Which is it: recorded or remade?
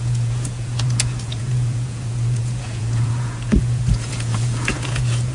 remade